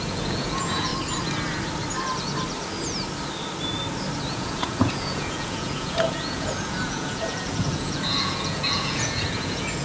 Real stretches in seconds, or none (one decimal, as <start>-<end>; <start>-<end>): 0.9-4.3